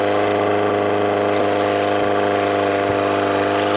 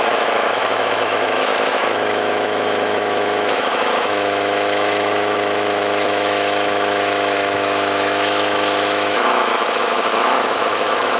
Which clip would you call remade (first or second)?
second